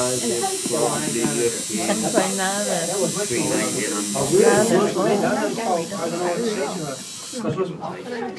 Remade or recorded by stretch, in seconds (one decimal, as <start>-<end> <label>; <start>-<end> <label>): 0.0-8.4 recorded